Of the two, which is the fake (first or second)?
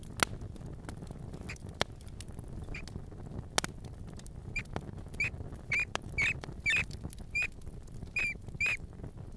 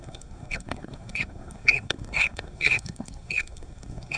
second